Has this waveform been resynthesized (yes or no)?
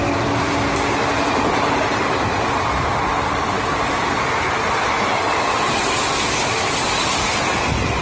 no